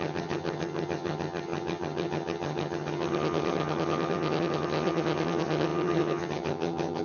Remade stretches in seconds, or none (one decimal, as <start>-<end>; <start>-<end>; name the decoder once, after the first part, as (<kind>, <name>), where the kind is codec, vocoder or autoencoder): 0.0-7.0 (vocoder, HiFi-GAN)